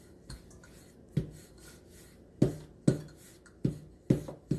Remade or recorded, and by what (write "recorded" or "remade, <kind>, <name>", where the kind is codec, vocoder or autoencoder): recorded